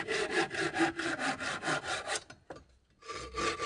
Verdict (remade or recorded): recorded